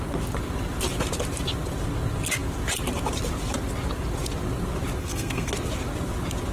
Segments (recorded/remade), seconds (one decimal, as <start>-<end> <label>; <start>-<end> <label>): 0.0-5.0 recorded; 5.0-5.5 remade; 5.5-6.5 recorded

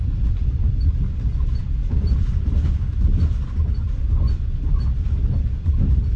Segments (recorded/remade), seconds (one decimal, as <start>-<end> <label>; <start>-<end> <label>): 0.0-6.2 recorded

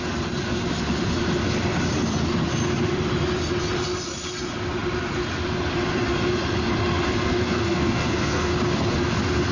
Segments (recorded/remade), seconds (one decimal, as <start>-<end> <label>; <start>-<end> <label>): 0.0-7.1 recorded; 7.1-8.5 remade; 8.5-9.5 recorded

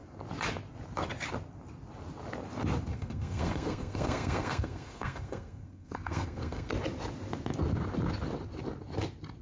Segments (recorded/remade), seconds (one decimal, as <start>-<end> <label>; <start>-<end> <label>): 0.0-2.9 recorded; 2.9-6.7 remade; 6.7-9.4 recorded